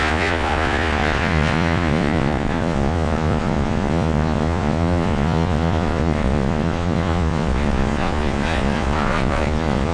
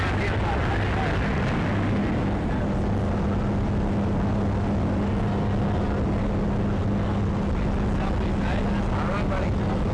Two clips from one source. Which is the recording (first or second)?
second